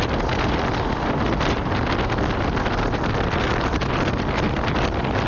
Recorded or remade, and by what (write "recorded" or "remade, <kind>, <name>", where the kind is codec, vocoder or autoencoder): recorded